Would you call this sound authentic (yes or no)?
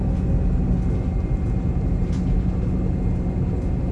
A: yes